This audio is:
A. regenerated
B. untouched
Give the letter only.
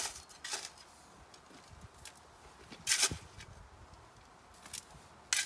B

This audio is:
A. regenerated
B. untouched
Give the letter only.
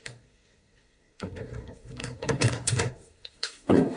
A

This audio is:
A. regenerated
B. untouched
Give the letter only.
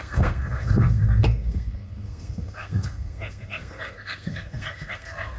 A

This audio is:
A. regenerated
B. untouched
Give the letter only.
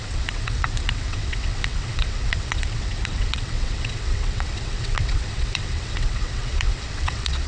A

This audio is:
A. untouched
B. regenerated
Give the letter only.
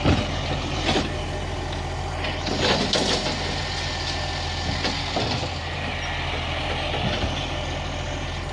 A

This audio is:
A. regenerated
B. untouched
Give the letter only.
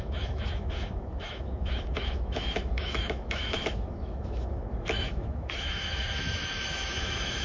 A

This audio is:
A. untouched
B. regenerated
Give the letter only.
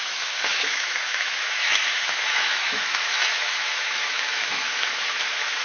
B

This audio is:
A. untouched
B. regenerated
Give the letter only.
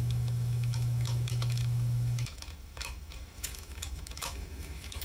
B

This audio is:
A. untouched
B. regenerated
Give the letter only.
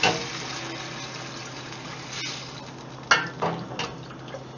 A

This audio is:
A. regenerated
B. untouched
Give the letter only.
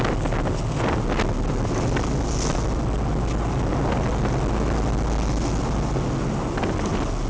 B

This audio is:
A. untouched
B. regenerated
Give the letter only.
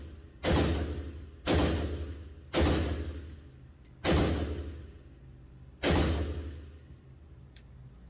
A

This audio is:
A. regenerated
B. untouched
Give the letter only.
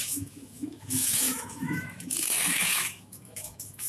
A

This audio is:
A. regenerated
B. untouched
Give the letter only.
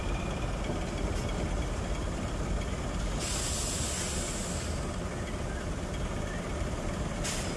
B